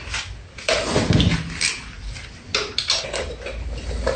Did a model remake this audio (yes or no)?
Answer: no